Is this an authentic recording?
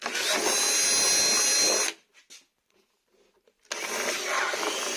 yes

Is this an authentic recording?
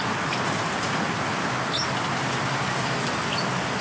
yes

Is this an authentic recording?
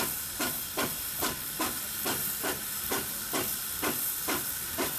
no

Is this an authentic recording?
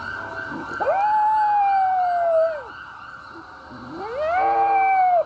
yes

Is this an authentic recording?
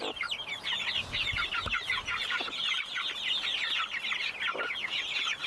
yes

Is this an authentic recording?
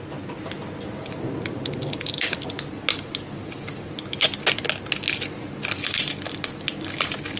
yes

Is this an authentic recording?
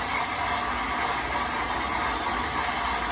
yes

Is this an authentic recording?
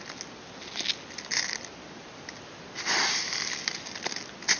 yes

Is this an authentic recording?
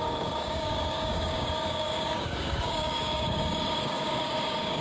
no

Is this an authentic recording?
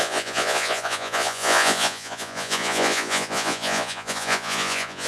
no